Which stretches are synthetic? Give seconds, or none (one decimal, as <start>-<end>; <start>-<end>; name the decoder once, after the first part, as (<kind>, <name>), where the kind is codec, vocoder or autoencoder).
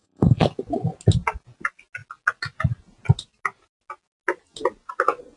0.0-0.5 (codec, SNAC)